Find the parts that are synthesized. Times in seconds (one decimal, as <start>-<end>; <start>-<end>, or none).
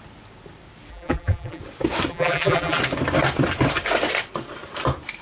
0.9-1.6; 2.1-2.8